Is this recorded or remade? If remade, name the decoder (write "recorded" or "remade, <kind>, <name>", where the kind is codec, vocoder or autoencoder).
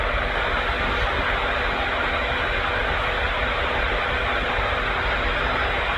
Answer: recorded